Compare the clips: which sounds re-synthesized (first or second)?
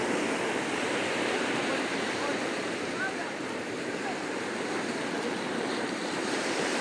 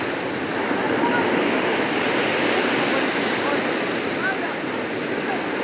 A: first